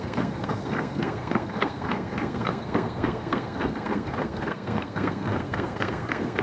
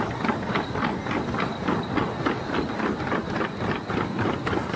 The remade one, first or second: first